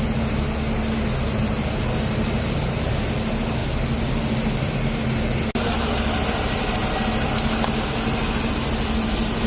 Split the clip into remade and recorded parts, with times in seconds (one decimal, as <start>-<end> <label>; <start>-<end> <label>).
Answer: 0.0-3.6 recorded; 3.6-4.1 remade; 4.1-9.5 recorded